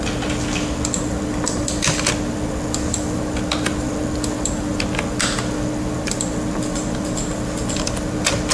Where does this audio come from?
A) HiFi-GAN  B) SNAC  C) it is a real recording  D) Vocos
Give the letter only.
C